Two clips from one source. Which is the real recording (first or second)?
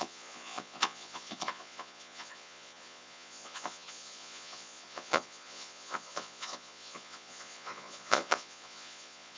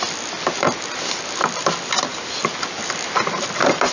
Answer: second